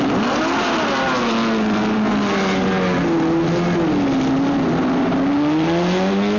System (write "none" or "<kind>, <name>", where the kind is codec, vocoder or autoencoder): none